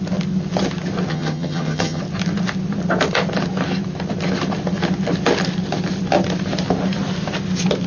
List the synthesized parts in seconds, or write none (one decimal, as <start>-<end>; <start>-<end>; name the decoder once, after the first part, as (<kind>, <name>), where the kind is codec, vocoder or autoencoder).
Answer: 1.1-2.0 (vocoder, HiFi-GAN)